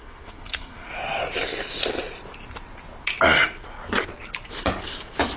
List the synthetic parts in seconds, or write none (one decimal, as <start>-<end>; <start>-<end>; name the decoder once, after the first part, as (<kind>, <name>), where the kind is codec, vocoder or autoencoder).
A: 0.0-0.9 (codec, SNAC)